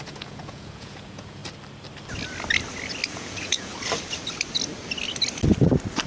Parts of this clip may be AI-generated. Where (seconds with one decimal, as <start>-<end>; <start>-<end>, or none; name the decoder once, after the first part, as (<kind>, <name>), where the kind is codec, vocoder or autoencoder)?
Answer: 0.0-1.4 (vocoder, Vocos); 3.1-3.7